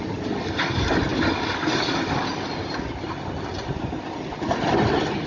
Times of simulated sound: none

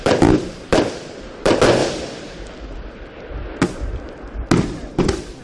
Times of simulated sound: 0.0-1.8 (vocoder, BigVGAN v2); 5.0-5.4

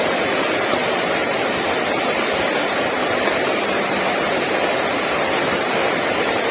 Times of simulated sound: 0.0-1.2 (vocoder, BigVGAN v2); 5.1-6.5

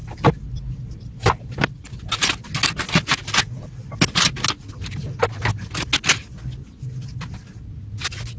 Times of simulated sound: 0.0-1.9 (vocoder, BigVGAN v2)

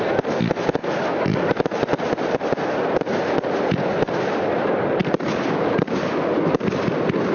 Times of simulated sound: none

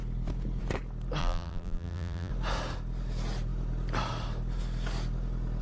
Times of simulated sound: 1.2-2.3 (vocoder, BigVGAN v2)

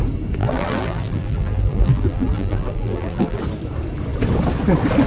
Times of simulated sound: 0.4-3.4 (vocoder, BigVGAN v2)